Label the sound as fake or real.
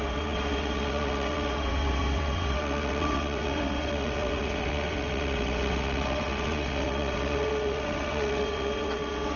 fake